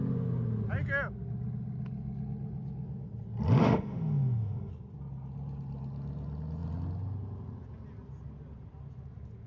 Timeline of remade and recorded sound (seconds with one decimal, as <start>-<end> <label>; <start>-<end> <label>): 0.0-3.6 recorded; 3.6-4.7 remade; 4.7-9.5 recorded